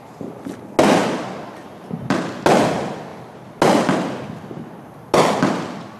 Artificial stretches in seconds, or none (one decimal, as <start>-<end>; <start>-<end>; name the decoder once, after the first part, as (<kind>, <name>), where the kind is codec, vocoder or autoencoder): none